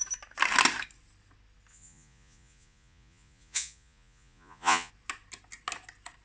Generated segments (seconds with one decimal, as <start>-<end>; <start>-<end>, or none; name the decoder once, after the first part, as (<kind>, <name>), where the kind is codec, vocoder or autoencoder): 1.7-4.9 (vocoder, Vocos)

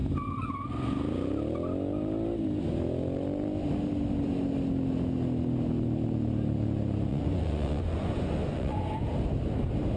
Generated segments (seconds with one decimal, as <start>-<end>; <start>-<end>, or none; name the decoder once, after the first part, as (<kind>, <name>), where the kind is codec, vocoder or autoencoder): 7.1-8.8 (vocoder, Vocos)

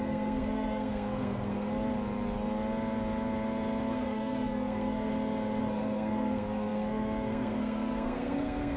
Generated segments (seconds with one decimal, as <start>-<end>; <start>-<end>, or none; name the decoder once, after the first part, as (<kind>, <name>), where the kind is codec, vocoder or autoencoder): 0.0-1.7 (codec, SNAC); 3.9-5.1; 5.6-8.8

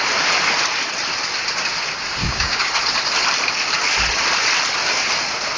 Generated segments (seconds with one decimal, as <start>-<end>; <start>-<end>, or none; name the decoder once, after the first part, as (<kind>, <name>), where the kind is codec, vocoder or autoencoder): 2.2-2.7 (codec, DAC)

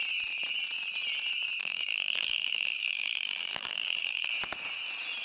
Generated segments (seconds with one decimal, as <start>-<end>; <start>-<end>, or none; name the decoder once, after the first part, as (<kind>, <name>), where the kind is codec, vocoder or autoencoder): 1.6-4.3 (vocoder, BigVGAN v2)

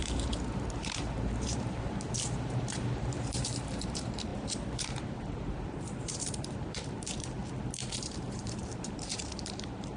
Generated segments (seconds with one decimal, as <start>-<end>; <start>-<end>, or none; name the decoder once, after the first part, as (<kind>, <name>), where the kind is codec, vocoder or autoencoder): 0.0-7.4 (vocoder, BigVGAN v2); 7.9-10.0

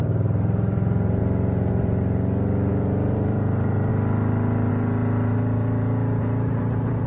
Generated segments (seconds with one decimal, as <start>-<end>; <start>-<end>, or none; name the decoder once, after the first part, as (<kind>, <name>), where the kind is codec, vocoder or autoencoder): 0.0-1.2 (vocoder, BigVGAN v2); 2.7-3.9; 4.7-7.1